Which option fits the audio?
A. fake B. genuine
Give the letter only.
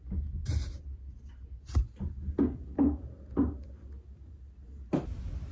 B